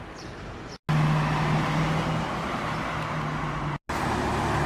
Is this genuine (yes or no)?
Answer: yes